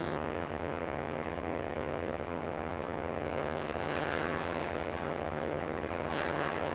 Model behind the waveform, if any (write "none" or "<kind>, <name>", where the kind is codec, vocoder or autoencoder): vocoder, HiFi-GAN